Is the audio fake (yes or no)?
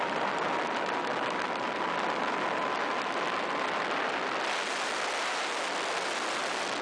no